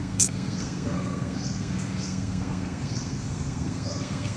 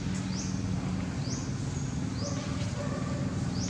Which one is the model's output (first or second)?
first